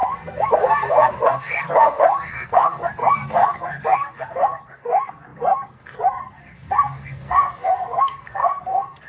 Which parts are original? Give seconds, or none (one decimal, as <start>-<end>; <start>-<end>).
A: none